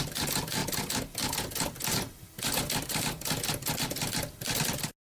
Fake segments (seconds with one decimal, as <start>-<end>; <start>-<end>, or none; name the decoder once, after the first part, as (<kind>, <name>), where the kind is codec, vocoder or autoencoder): none